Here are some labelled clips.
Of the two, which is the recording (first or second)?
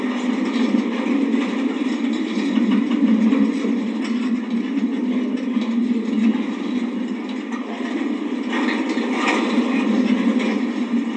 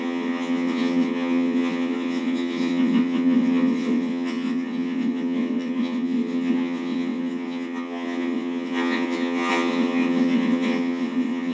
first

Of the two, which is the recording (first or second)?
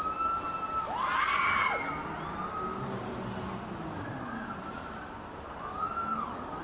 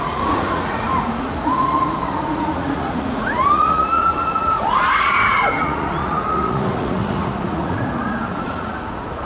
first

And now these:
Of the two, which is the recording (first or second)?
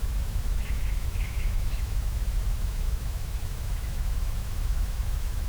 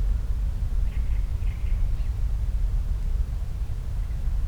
second